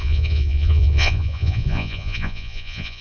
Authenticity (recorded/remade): remade